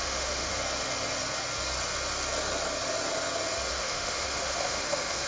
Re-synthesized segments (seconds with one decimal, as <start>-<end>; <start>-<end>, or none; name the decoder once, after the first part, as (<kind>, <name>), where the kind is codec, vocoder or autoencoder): 0.0-0.5 (autoencoder, DAC-VAE); 3.7-5.3